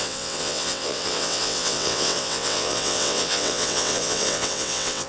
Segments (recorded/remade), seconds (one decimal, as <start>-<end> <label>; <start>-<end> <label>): 0.0-5.1 remade